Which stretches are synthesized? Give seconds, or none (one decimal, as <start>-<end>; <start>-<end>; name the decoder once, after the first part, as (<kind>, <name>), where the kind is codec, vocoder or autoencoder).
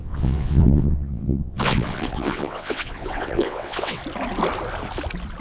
0.0-4.0 (vocoder, WaveNeXt)